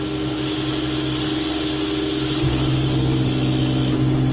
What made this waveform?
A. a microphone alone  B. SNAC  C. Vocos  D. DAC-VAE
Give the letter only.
A